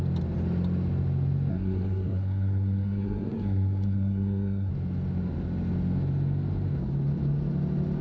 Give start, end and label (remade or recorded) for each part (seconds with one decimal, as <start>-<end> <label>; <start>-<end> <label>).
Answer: 0.0-1.5 recorded; 1.5-4.7 remade; 4.7-8.0 recorded